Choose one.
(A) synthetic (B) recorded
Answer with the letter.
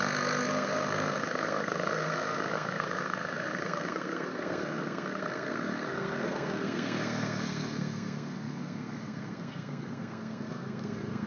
A